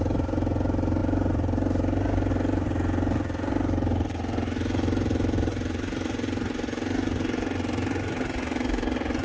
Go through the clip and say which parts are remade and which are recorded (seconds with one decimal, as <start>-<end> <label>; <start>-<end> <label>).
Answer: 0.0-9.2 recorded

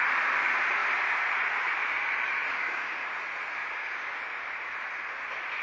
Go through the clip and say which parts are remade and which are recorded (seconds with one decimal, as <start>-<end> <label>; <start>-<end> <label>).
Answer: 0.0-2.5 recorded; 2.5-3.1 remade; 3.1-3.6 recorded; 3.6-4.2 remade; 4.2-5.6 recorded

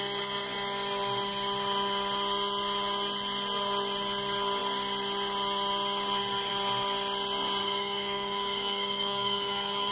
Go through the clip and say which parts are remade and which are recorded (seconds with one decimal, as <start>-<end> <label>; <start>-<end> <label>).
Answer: 0.0-7.6 recorded; 7.6-9.9 remade

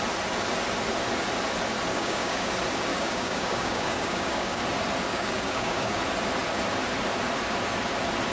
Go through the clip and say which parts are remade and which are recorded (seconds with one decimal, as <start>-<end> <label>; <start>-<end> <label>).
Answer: 0.0-1.9 recorded; 1.9-2.5 remade; 2.5-2.9 recorded; 2.9-4.6 remade; 4.6-5.1 recorded; 5.1-6.0 remade; 6.0-8.3 recorded

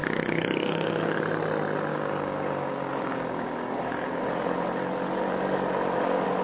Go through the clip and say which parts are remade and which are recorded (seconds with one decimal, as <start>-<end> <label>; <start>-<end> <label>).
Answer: 0.0-1.0 remade; 1.0-1.9 recorded; 1.9-4.2 remade; 4.2-6.4 recorded

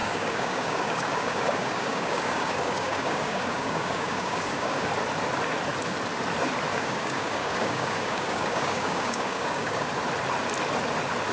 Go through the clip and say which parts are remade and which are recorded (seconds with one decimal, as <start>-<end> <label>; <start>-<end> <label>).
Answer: 0.0-4.9 remade; 4.9-6.7 recorded; 6.7-9.9 remade; 9.9-11.3 recorded

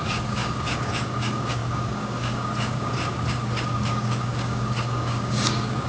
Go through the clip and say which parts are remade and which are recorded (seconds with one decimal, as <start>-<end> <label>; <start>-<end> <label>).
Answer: 0.0-5.9 remade

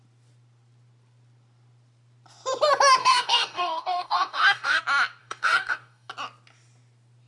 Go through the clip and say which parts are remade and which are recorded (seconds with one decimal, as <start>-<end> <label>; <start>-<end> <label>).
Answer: 0.0-3.0 recorded; 3.0-4.8 remade; 4.8-5.2 recorded; 5.2-6.1 remade; 6.1-7.3 recorded